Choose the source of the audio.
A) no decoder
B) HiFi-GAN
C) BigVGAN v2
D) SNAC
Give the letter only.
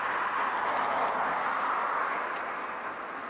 A